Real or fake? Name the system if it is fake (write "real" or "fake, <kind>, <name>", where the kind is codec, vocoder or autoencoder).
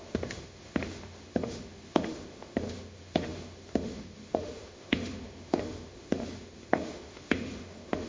fake, autoencoder, DAC-VAE